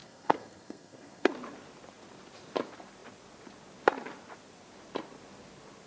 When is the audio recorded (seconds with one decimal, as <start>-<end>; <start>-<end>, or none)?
1.3-5.9